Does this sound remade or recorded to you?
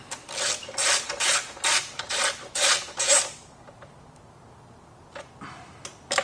recorded